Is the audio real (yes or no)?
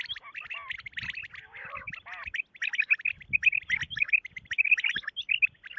yes